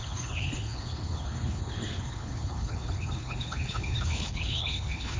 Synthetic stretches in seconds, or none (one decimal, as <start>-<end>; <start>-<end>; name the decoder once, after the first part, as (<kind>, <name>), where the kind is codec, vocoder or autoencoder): 0.0-5.2 (codec, HILCodec)

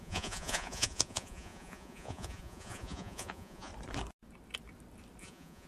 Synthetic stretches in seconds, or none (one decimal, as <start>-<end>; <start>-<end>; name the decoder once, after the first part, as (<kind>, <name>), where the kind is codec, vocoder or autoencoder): 0.0-3.7 (vocoder, Vocos); 5.2-5.7

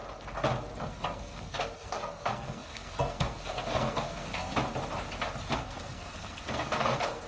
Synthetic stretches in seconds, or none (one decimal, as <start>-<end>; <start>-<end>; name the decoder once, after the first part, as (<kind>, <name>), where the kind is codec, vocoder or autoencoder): 0.8-4.5 (codec, SNAC); 5.5-7.3